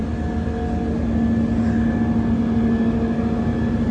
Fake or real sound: real